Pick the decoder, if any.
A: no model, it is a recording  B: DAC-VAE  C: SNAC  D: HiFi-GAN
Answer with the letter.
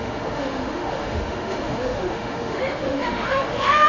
B